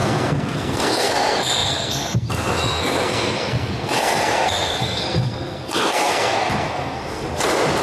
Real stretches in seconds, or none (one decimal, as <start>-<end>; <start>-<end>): 7.2-7.8